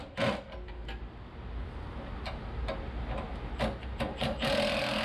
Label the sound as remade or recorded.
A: recorded